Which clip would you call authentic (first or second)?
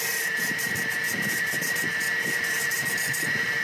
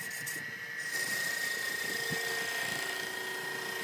second